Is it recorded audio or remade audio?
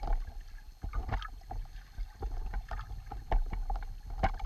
recorded